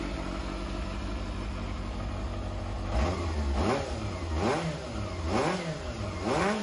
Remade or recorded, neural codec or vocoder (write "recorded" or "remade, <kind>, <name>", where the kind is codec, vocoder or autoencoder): recorded